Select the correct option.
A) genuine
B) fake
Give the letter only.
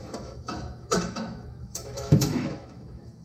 B